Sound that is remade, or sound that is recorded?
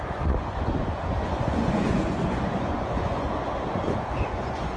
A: remade